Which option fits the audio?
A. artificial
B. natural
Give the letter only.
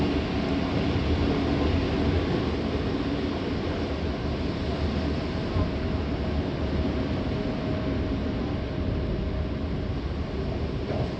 B